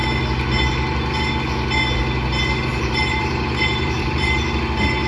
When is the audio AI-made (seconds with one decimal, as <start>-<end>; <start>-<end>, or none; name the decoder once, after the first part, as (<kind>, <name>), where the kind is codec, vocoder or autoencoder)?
2.7-4.6 (vocoder, BigVGAN v2)